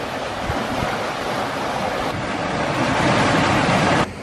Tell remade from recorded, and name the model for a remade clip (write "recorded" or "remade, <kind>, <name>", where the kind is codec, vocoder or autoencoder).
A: recorded